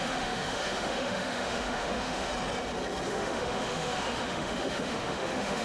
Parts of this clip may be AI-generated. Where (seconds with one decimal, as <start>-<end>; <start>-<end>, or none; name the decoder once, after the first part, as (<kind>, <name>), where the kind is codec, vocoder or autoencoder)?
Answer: 0.0-2.3 (autoencoder, DAC-VAE); 3.1-5.6